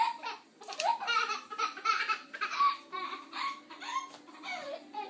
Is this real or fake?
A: fake